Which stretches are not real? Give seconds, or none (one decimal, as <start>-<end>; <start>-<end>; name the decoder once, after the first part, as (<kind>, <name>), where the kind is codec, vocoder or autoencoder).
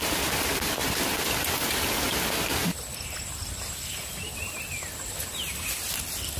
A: none